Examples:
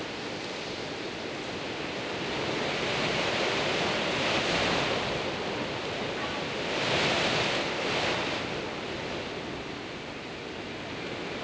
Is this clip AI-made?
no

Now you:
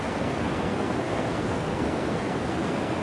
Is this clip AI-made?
yes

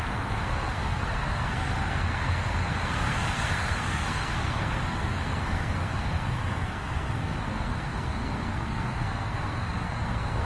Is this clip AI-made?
yes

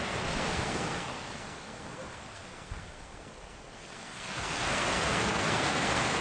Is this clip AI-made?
yes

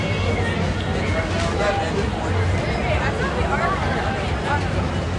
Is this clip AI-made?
no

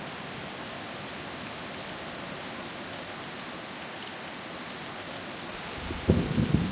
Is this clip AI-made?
no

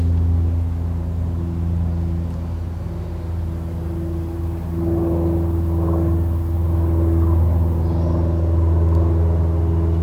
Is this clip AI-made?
no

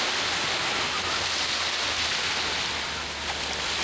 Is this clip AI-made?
no